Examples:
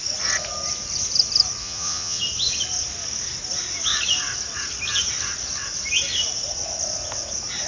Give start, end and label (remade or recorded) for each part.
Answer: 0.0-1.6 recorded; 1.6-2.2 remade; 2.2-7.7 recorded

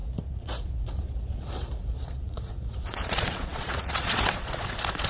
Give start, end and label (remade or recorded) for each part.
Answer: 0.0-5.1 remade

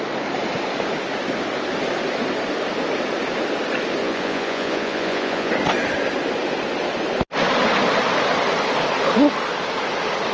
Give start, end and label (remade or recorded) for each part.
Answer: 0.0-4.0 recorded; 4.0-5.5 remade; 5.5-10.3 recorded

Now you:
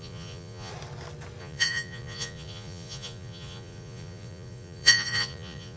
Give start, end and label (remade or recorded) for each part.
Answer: 0.0-0.7 remade; 0.7-1.4 recorded; 1.4-5.8 remade

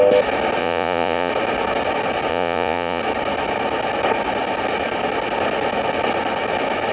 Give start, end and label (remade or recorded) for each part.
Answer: 0.0-0.6 recorded; 0.6-1.3 remade; 1.3-2.3 recorded; 2.3-3.0 remade; 3.0-6.9 recorded

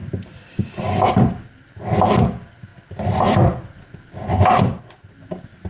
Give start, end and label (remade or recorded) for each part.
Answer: 0.0-5.7 recorded

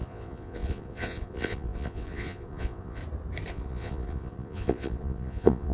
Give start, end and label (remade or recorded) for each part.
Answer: 0.0-3.0 remade; 3.0-3.5 recorded; 3.5-5.7 remade